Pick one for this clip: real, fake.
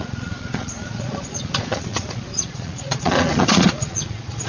fake